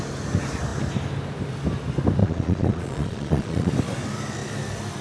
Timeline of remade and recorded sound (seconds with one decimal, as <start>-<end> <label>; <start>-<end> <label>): 0.0-2.2 recorded; 2.2-3.7 remade; 3.7-5.0 recorded